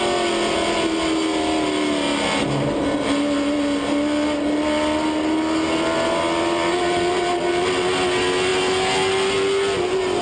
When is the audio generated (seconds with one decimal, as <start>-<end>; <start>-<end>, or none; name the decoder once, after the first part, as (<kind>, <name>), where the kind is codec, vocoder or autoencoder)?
none